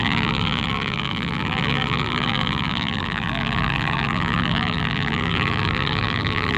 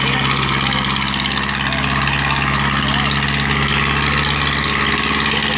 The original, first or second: second